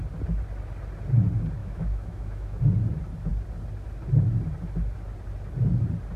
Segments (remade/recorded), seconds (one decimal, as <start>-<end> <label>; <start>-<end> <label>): 0.0-1.6 recorded; 1.6-2.6 remade; 2.6-6.2 recorded